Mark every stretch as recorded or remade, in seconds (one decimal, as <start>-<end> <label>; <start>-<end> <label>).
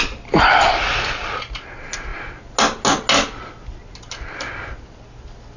0.0-5.6 recorded